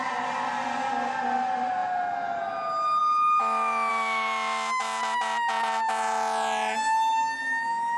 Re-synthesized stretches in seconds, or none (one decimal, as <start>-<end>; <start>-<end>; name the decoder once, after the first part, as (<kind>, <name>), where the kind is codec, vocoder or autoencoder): none